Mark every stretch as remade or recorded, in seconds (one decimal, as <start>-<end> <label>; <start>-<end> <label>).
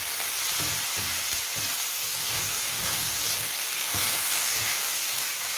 0.0-1.9 recorded; 1.9-5.6 remade